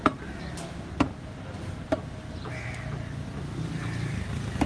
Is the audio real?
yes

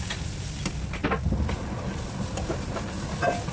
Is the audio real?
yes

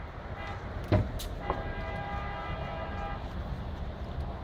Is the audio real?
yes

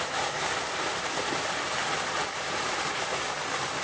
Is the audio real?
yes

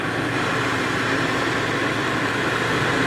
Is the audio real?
yes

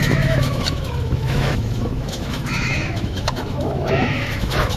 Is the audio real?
no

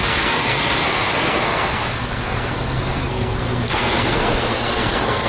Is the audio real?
no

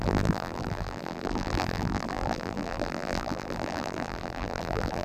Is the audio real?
no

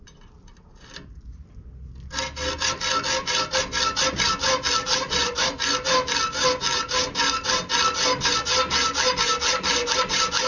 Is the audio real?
yes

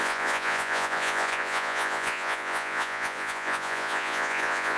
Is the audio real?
no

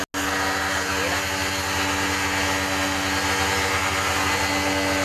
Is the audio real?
yes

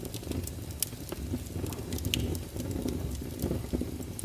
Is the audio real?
yes